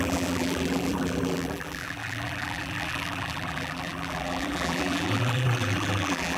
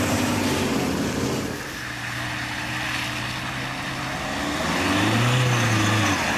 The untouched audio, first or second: second